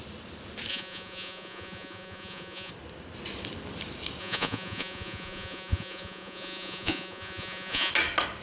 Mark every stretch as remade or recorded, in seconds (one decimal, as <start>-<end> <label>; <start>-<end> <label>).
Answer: 0.0-0.7 recorded; 0.7-2.7 remade; 2.7-4.2 recorded; 4.2-7.9 remade; 7.9-8.4 recorded